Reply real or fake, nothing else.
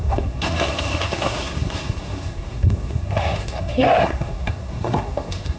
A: fake